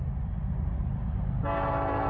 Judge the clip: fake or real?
real